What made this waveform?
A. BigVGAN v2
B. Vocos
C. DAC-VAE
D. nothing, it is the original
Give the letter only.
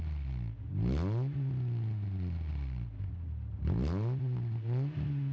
D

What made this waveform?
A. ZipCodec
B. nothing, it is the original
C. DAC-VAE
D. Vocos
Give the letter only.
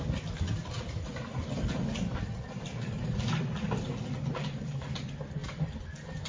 B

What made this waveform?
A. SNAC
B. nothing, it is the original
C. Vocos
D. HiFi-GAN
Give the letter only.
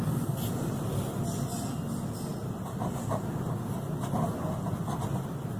B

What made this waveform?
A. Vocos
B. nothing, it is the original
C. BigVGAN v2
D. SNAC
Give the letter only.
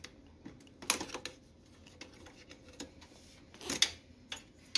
B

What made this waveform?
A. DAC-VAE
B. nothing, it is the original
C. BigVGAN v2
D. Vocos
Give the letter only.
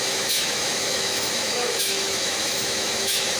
A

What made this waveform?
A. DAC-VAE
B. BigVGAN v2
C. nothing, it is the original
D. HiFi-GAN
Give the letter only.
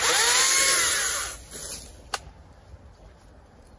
C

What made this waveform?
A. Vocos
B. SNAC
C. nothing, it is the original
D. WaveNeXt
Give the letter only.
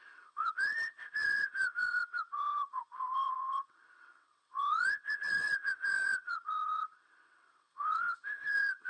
D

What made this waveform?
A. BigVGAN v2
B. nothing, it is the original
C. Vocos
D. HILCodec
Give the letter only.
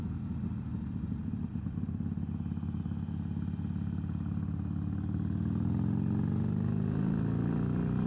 B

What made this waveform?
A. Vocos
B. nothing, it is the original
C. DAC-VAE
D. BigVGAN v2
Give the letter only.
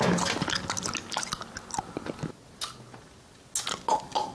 B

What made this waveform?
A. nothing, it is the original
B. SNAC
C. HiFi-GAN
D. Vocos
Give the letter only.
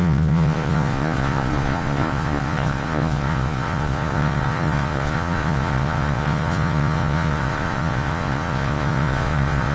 D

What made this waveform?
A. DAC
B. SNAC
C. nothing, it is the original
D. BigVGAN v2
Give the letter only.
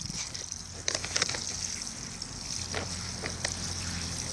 C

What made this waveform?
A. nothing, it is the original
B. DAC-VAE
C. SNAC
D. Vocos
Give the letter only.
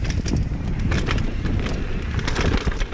A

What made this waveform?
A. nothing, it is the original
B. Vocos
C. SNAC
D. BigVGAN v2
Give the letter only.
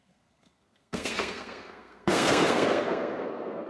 C